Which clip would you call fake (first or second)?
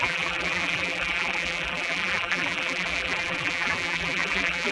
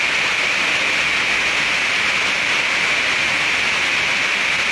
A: first